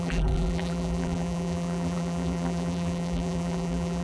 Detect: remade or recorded remade